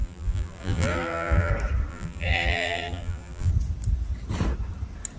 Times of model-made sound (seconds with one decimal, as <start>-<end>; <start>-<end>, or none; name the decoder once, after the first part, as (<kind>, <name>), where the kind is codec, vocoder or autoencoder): 0.0-1.5 (vocoder, BigVGAN v2); 1.9-3.5